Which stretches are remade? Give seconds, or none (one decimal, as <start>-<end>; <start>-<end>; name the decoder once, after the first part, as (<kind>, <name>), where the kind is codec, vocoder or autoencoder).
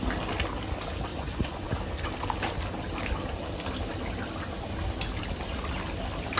1.1-1.7 (vocoder, Vocos)